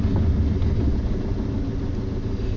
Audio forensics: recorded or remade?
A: recorded